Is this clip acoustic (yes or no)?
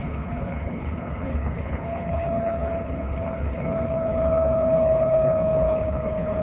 no